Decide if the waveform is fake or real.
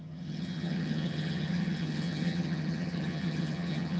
fake